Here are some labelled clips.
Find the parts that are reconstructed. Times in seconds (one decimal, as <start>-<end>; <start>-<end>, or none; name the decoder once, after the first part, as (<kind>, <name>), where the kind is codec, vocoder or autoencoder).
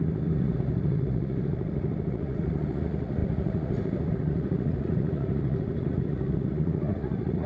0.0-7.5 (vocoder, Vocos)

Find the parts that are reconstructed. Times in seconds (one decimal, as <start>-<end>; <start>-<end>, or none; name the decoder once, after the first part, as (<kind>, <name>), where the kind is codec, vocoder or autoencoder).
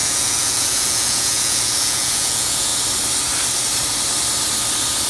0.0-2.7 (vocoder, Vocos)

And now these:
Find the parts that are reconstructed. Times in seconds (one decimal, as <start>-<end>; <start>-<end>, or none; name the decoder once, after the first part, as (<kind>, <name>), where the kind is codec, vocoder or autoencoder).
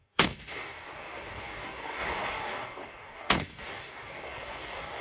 0.0-5.0 (codec, DAC)